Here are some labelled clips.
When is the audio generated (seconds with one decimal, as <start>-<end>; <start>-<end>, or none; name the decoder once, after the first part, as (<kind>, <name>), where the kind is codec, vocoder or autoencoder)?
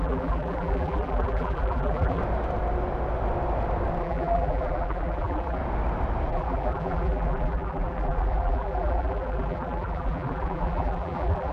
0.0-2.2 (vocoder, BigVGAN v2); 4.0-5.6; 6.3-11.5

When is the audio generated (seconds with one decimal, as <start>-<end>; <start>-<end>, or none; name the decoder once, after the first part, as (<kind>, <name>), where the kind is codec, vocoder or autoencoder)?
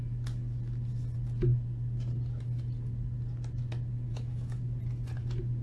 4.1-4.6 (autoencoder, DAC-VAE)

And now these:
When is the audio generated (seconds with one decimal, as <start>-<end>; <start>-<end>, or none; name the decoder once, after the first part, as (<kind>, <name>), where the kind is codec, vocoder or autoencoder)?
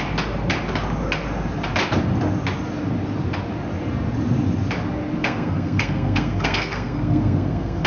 5.2-7.9 (codec, SNAC)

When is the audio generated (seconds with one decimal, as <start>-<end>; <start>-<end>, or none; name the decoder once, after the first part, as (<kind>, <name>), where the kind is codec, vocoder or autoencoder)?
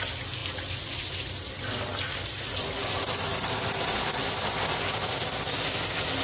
none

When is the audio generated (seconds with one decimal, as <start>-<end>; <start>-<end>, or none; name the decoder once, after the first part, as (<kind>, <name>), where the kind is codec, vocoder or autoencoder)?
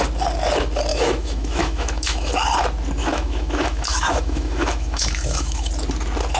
0.9-2.3 (autoencoder, DAC-VAE); 3.0-5.7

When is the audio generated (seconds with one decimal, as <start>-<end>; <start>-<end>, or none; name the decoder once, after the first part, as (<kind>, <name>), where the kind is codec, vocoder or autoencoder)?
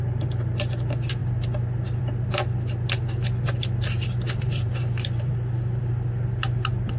4.0-5.3 (vocoder, BigVGAN v2)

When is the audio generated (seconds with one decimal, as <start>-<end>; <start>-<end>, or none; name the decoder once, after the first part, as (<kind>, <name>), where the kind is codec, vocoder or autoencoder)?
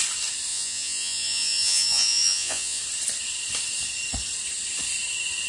0.5-2.8 (vocoder, Vocos)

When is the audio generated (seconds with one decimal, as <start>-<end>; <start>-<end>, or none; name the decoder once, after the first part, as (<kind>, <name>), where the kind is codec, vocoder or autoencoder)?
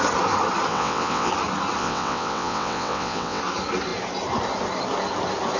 0.7-1.3 (vocoder, WaveNeXt); 1.8-3.4